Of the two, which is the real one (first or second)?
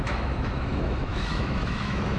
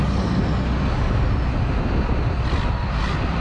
second